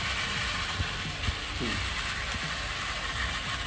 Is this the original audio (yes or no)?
no